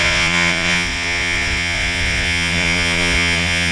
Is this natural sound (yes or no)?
no